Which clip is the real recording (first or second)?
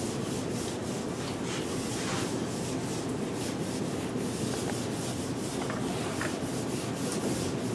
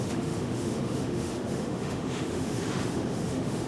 first